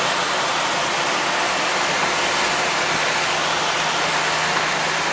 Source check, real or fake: real